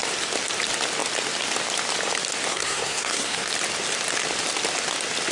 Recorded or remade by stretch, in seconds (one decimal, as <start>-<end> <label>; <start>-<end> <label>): 0.0-2.5 recorded; 2.5-3.5 remade; 3.5-5.3 recorded

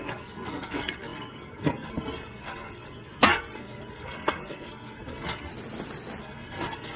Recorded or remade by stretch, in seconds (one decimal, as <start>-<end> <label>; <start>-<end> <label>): 0.0-5.5 remade; 5.5-6.2 recorded; 6.2-7.0 remade

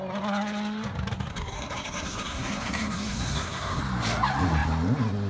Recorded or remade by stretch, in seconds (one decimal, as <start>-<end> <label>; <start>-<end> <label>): 0.0-1.3 recorded; 1.3-3.8 remade; 3.8-5.3 recorded

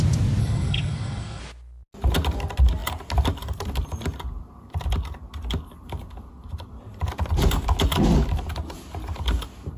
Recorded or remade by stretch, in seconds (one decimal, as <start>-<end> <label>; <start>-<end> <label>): 0.0-0.4 recorded; 0.4-1.4 remade; 1.4-9.8 recorded